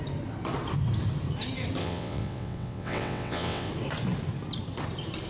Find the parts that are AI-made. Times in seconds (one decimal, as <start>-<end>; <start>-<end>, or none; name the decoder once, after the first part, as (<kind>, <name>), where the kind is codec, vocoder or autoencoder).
1.8-3.7 (vocoder, WaveNeXt)